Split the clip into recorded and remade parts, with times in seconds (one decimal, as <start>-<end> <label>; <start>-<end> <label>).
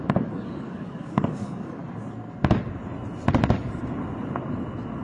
0.0-1.8 remade; 1.8-5.0 recorded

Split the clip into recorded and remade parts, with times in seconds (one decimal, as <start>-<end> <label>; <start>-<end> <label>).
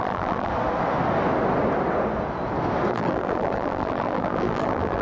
0.0-0.5 remade; 0.5-2.9 recorded; 2.9-5.0 remade